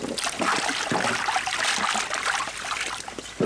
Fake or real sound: real